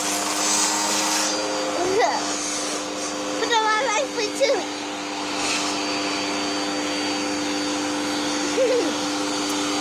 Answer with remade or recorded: recorded